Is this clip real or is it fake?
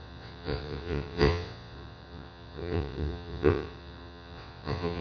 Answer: fake